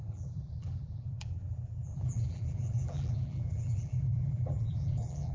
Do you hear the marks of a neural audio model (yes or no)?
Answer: yes